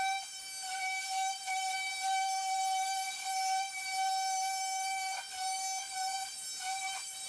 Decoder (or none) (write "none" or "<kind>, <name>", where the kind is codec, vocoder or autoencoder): none